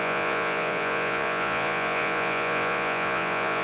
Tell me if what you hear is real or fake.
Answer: fake